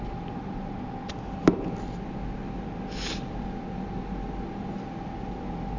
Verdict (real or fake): real